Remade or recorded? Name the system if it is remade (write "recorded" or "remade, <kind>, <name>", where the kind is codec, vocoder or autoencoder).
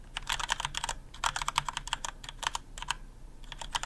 recorded